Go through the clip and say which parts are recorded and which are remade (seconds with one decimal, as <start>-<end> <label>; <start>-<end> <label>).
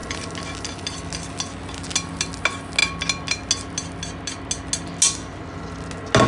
0.0-6.3 recorded